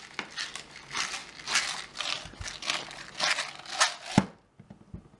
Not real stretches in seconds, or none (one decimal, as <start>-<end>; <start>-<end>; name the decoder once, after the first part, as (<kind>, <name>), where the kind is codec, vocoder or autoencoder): none